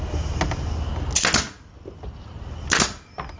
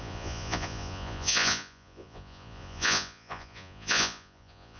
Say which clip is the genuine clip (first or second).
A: first